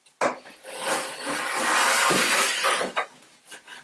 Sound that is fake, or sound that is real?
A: real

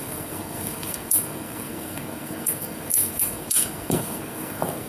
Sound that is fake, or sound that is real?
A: fake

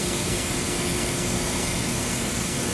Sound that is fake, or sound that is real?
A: fake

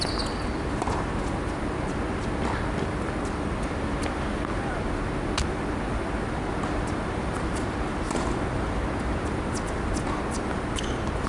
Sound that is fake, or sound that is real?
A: real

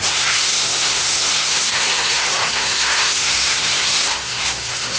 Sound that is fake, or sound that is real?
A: fake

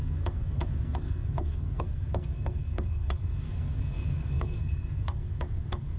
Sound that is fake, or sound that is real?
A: fake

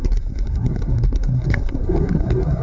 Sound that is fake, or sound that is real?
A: fake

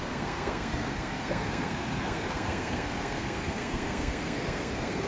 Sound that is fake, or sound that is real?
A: fake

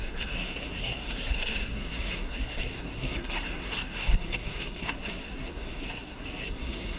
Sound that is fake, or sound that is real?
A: fake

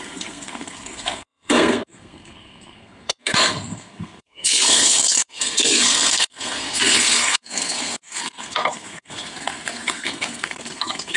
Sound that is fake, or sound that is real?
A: fake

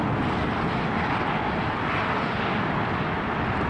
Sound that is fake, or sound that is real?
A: real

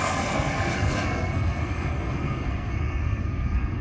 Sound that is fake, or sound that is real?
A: fake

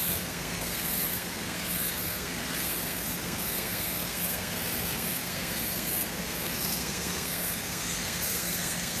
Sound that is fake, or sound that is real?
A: fake